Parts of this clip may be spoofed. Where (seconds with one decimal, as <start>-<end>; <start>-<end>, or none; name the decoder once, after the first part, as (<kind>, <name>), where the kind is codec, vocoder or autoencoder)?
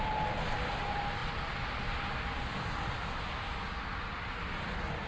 none